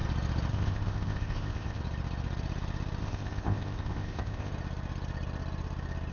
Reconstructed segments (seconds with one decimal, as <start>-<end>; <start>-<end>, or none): 0.5-1.8; 3.0-4.5